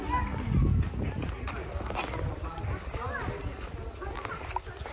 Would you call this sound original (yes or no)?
yes